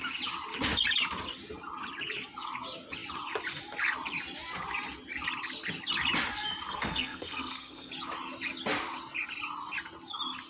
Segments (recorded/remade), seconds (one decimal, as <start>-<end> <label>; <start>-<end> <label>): 0.0-6.7 recorded; 6.7-7.9 remade; 7.9-10.5 recorded